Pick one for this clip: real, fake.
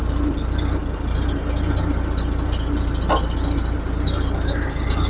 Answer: real